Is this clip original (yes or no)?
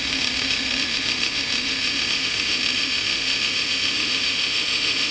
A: no